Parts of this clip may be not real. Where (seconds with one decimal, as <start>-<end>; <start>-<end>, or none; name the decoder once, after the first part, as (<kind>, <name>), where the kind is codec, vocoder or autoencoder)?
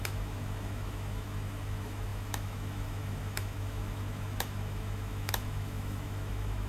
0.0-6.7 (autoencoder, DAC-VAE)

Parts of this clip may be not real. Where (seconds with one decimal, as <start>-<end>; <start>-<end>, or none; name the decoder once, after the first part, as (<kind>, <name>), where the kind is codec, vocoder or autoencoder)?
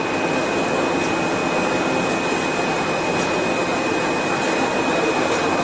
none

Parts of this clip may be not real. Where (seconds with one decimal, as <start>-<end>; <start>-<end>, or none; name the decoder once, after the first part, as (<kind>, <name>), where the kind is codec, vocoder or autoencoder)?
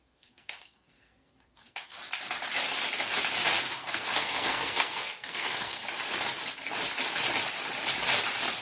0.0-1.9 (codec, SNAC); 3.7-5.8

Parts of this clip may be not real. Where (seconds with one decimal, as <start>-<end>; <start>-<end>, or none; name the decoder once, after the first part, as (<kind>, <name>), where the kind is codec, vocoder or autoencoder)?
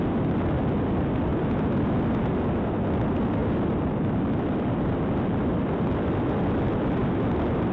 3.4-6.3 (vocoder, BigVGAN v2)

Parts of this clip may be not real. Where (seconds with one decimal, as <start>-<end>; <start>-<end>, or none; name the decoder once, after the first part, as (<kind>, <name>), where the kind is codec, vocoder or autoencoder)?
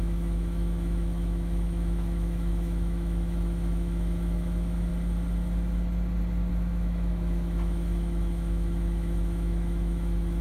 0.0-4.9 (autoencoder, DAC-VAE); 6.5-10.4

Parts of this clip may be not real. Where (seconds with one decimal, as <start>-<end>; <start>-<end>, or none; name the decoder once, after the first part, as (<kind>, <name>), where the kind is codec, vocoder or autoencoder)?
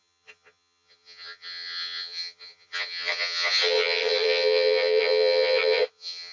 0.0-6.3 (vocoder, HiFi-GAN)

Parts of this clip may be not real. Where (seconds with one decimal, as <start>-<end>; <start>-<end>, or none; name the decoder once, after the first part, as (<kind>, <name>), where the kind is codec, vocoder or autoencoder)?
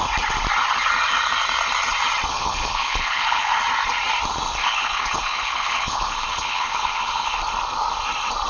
2.3-3.6 (codec, HILCodec); 4.6-7.4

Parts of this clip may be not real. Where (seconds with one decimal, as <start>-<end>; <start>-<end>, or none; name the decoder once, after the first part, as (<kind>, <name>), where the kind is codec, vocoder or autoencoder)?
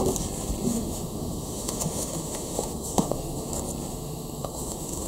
0.7-3.5 (autoencoder, DAC-VAE); 3.9-5.1